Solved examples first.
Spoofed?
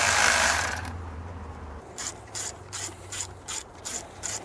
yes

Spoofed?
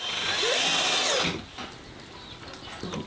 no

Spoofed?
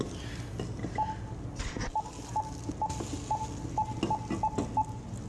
no